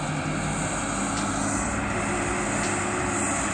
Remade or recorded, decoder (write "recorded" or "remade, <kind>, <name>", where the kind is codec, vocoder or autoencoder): recorded